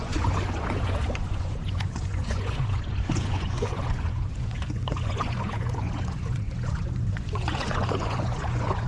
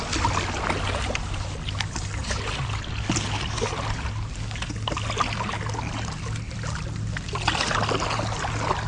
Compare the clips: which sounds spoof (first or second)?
first